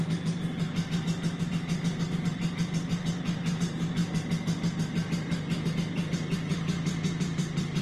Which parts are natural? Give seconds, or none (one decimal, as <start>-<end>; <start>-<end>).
0.0-7.8